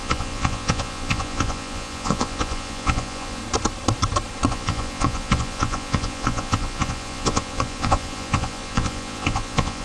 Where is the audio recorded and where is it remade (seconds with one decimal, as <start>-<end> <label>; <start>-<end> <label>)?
0.0-3.4 remade; 3.4-4.5 recorded; 4.5-9.8 remade